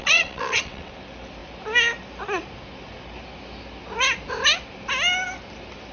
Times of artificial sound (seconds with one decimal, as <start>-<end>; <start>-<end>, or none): 0.0-0.9